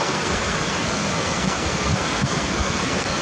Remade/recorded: remade